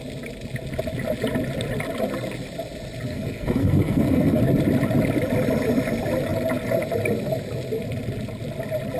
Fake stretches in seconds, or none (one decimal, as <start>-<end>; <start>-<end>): 3.1-4.4

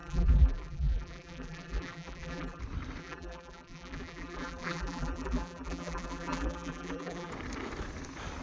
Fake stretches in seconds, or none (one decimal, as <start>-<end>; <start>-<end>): 0.0-2.6; 3.0-7.3

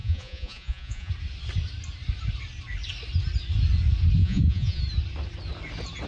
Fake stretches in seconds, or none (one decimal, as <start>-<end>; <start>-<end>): 0.0-1.1; 4.2-4.8

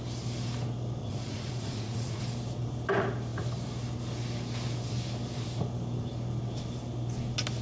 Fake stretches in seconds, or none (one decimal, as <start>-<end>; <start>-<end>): 1.0-2.2

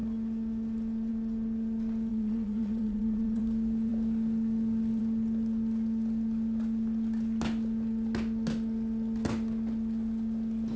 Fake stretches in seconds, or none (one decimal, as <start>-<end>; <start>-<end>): 2.1-3.4

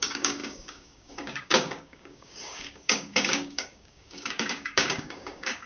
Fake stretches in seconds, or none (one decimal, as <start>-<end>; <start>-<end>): 0.0-5.7

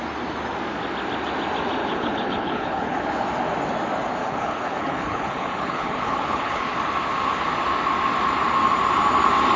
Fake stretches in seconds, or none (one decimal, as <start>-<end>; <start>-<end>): 1.8-3.1; 4.2-6.7